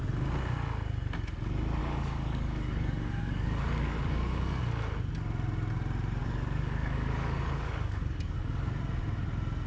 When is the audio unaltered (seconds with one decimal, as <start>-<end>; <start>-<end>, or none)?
0.0-1.8; 4.6-6.2; 8.7-9.7